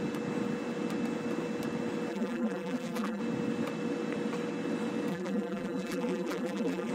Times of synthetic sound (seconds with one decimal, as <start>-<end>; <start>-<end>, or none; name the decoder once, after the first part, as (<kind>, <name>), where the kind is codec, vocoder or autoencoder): 2.1-3.2 (vocoder, BigVGAN v2); 5.1-6.9